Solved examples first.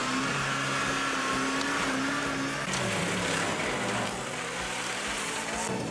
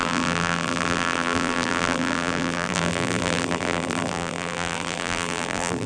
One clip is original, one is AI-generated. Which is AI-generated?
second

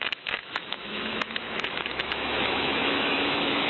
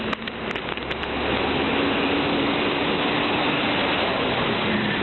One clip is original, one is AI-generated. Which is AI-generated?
first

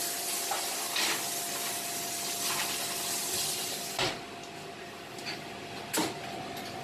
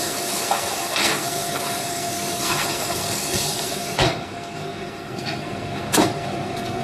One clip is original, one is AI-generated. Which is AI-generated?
second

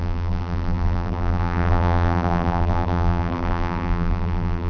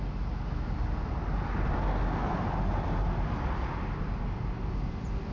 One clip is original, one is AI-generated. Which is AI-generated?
first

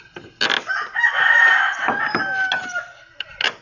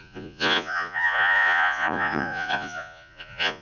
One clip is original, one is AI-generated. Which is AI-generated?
second